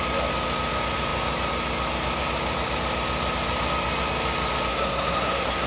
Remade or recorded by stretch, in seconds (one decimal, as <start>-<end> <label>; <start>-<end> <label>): 0.0-4.7 recorded; 4.7-5.7 remade